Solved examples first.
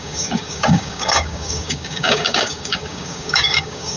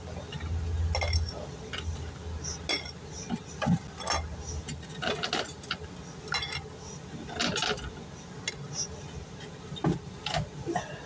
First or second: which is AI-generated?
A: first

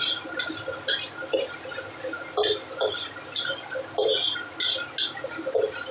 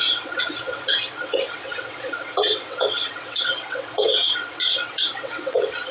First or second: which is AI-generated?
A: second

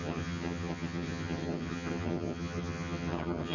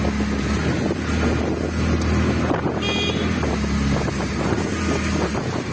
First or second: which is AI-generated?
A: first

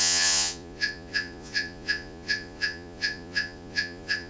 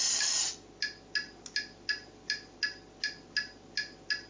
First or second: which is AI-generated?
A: first